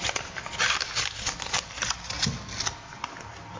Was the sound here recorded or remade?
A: recorded